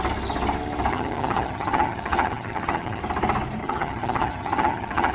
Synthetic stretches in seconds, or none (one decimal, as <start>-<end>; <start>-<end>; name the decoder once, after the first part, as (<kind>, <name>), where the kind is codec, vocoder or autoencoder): 0.9-3.0 (vocoder, HiFi-GAN); 3.6-5.1